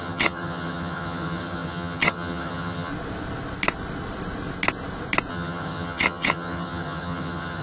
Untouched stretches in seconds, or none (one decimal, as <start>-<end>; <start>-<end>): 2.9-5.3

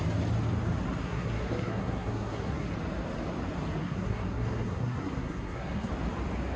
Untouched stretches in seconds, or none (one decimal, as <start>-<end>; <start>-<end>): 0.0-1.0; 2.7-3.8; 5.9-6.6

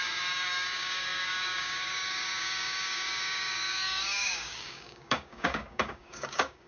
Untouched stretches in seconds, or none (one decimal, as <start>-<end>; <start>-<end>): none

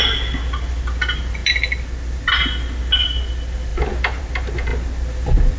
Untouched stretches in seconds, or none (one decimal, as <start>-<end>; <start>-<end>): 0.0-5.6

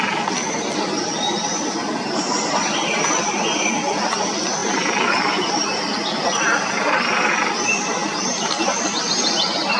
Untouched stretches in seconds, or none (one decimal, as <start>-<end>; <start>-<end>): 0.0-4.6; 7.5-8.0; 9.0-9.8